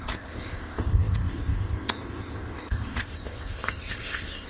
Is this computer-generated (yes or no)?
yes